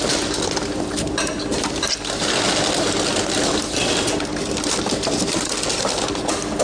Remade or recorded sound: recorded